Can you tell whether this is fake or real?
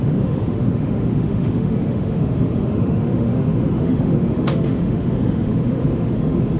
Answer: fake